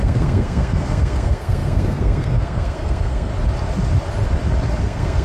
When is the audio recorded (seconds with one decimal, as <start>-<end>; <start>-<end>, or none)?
3.3-4.8